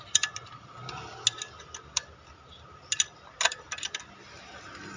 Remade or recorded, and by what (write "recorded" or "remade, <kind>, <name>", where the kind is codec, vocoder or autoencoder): recorded